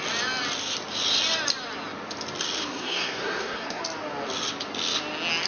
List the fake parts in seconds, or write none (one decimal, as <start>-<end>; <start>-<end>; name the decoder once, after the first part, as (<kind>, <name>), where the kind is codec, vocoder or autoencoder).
2.6-3.8 (codec, SNAC)